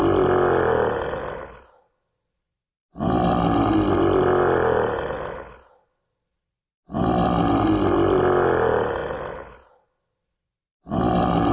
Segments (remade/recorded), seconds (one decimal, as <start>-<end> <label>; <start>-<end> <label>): 0.0-11.5 recorded